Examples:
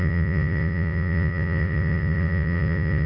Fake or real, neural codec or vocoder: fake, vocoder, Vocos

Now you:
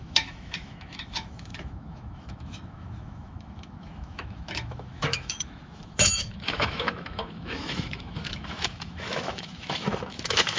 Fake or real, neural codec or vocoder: fake, autoencoder, DAC-VAE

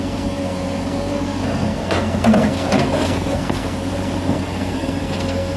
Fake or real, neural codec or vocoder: fake, codec, SNAC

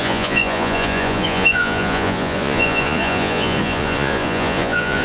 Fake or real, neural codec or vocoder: fake, vocoder, Vocos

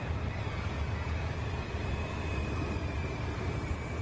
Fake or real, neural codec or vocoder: real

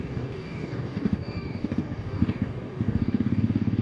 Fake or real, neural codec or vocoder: fake, codec, DAC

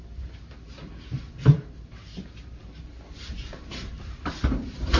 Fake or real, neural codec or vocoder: fake, vocoder, BigVGAN v2